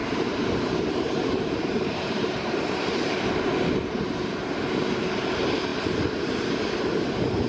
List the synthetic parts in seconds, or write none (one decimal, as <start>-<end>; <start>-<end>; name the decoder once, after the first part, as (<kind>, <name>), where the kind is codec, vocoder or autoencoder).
0.0-3.2 (vocoder, BigVGAN v2)